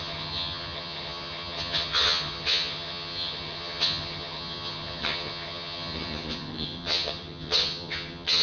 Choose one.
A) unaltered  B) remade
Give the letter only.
B